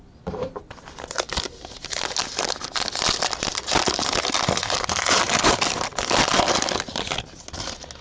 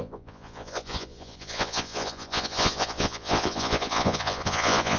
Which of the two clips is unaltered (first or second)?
first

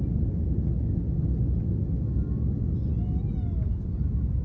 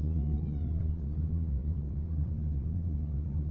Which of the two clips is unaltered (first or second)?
first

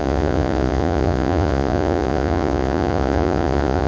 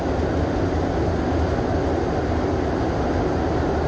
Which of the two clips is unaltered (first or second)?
second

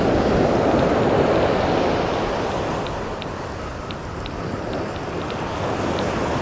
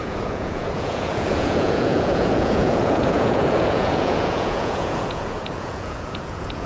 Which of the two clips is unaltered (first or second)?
first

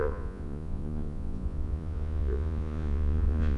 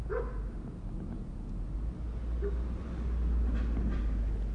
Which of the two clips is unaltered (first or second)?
second